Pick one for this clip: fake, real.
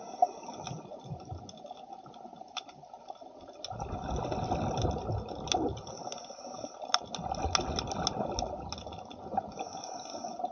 real